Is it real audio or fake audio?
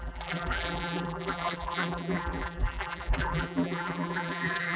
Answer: fake